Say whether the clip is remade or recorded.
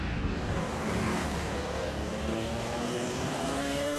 remade